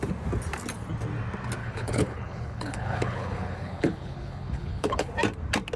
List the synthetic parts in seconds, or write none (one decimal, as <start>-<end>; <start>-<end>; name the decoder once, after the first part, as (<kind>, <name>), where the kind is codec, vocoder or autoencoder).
1.6-5.1 (codec, HILCodec)